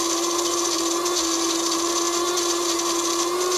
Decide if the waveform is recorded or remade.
recorded